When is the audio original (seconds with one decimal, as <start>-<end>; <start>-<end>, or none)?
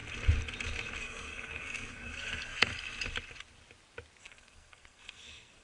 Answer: 0.0-1.0; 2.7-4.2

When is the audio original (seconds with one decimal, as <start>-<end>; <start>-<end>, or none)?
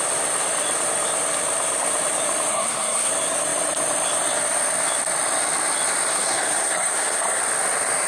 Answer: 0.0-2.5; 3.1-6.1; 7.4-8.1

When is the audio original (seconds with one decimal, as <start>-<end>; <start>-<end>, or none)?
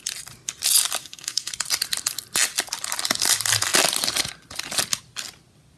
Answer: 0.0-1.0; 1.5-5.8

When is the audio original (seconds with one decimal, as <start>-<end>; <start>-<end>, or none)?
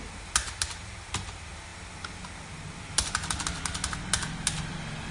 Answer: 0.0-5.1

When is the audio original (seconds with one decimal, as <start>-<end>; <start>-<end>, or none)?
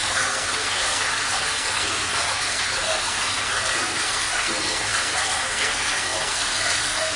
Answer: none